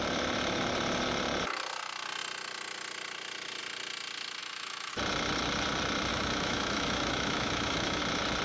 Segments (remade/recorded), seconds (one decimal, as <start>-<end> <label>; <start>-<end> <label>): 0.0-4.4 recorded; 4.4-4.9 remade; 4.9-6.1 recorded; 6.1-8.0 remade; 8.0-8.4 recorded